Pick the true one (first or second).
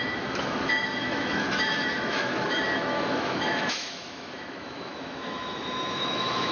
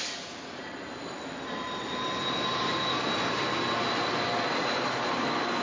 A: second